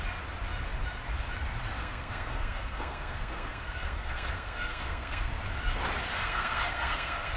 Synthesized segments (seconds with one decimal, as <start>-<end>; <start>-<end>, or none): 1.8-5.3; 6.1-7.4